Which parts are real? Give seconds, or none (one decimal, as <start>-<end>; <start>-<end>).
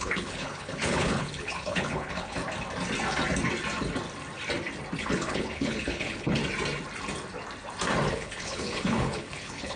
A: 2.4-5.0; 6.4-8.1